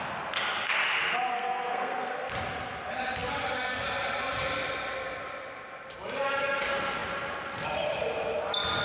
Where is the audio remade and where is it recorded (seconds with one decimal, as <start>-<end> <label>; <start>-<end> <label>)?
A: 0.0-1.3 recorded; 1.3-2.3 remade; 2.3-8.8 recorded